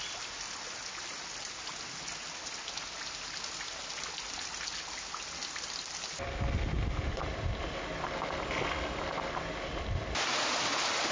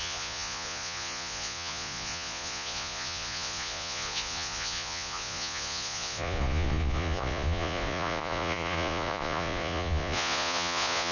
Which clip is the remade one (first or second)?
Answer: second